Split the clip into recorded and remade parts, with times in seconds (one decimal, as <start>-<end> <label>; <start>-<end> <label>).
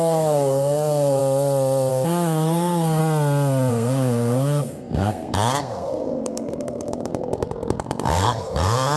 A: 0.0-1.2 remade; 1.2-1.9 recorded; 1.9-3.0 remade; 3.0-3.7 recorded; 3.7-9.0 remade